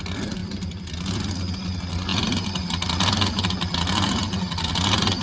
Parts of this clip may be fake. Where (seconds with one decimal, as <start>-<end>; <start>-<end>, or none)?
none